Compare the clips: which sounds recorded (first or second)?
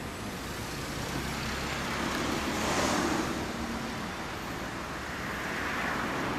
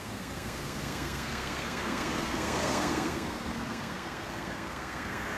first